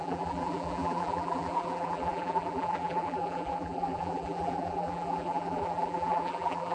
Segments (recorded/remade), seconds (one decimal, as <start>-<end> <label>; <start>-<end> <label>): 0.0-6.7 remade